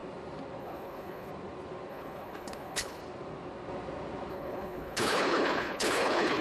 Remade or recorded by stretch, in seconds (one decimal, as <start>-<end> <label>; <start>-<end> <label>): 0.0-0.6 recorded; 0.6-1.3 remade; 1.3-1.9 recorded; 1.9-3.0 remade; 3.0-4.3 recorded; 4.3-6.4 remade